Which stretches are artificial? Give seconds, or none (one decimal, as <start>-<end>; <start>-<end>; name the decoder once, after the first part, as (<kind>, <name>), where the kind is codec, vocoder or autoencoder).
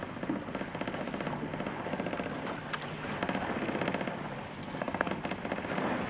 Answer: 4.6-5.1 (codec, SNAC)